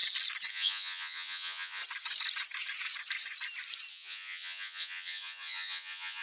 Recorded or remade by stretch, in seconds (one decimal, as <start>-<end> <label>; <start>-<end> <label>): 0.0-0.5 recorded; 0.5-1.8 remade; 1.8-3.9 recorded; 3.9-6.2 remade